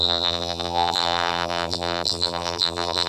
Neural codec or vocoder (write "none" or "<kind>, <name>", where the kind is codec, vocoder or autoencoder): vocoder, BigVGAN v2